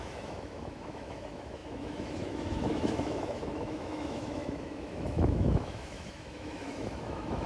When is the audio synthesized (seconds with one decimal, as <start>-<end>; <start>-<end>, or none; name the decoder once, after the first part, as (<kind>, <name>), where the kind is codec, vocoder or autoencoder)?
0.0-7.5 (autoencoder, DAC-VAE)

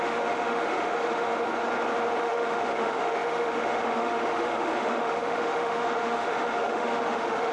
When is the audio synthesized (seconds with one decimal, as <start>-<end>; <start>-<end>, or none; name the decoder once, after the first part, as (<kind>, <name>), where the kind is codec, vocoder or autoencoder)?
0.0-1.3 (autoencoder, DAC-VAE); 2.2-7.5